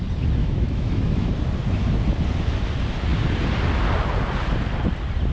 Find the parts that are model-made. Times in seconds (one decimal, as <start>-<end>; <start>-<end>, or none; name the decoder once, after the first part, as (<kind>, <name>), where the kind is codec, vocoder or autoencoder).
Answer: 0.4-1.3 (autoencoder, DAC-VAE)